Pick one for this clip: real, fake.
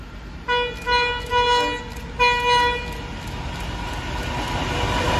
real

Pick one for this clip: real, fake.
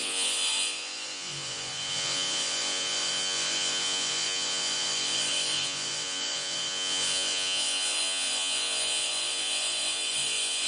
fake